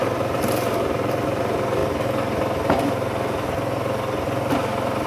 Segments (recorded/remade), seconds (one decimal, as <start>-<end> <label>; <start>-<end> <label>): 0.0-1.8 remade; 1.8-5.1 recorded